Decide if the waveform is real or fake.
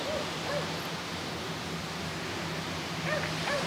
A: real